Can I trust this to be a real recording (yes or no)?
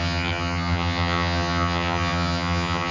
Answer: no